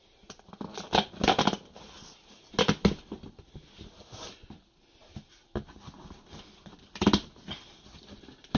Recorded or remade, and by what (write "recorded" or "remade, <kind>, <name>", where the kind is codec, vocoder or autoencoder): recorded